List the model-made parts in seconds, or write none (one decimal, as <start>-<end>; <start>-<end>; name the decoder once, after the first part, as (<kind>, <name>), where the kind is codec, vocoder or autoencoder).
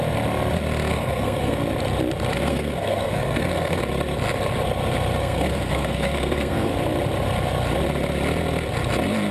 0.9-1.6 (codec, SNAC); 2.3-3.8; 5.2-6.7